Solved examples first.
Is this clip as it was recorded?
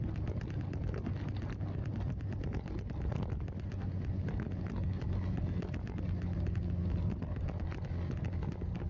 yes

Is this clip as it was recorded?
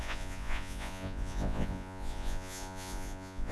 no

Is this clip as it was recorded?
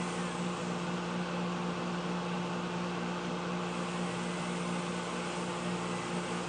yes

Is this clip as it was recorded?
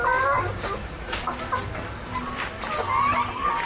yes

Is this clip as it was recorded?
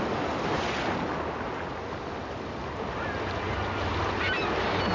yes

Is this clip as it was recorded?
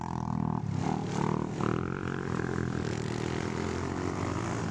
yes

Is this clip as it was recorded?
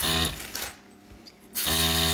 yes